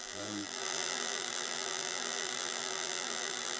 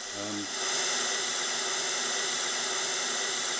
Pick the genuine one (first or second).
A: second